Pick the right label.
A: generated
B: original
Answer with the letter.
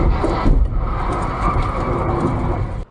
B